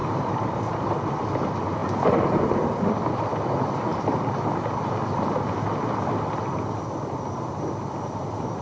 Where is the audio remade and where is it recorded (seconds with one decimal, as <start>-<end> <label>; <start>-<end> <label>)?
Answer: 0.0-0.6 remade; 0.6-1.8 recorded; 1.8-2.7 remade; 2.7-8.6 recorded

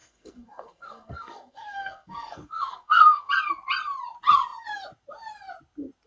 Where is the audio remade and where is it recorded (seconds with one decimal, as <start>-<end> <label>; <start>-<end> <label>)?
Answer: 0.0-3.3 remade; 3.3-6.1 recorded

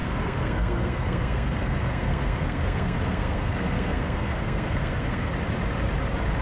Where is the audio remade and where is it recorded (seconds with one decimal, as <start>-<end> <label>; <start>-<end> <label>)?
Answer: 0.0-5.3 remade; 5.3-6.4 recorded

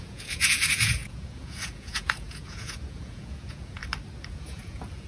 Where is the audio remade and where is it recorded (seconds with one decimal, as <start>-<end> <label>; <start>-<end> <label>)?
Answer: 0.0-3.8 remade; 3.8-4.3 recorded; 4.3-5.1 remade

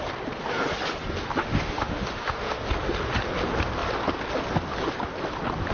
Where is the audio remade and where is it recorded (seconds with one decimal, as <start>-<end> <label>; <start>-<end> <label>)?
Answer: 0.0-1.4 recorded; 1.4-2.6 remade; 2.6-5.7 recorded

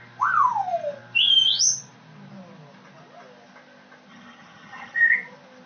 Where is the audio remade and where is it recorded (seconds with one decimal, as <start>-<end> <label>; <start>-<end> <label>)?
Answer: 0.0-4.1 recorded; 4.1-5.1 remade; 5.1-5.7 recorded